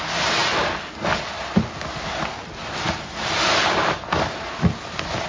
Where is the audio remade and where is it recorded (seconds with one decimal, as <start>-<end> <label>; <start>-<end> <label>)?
0.0-5.3 recorded